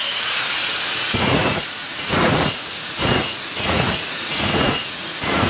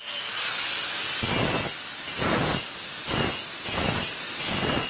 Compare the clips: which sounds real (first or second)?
second